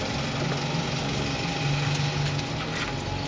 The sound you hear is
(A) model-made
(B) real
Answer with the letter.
B